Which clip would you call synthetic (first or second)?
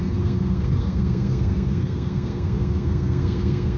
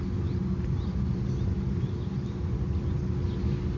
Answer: first